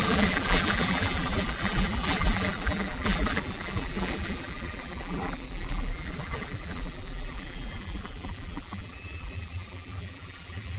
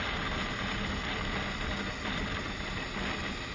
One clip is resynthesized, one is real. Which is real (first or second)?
second